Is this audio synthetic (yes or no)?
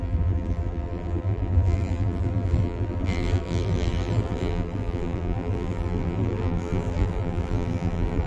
yes